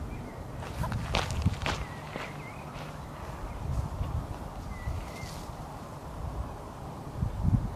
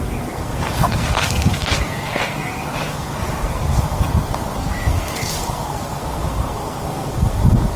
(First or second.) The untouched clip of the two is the first